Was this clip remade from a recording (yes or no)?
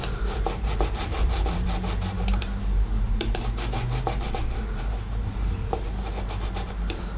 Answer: yes